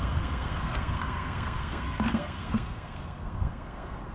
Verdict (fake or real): fake